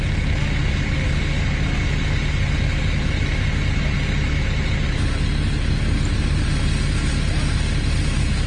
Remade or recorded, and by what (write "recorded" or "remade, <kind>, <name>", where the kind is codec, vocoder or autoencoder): recorded